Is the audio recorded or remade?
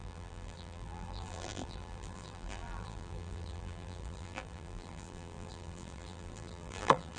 remade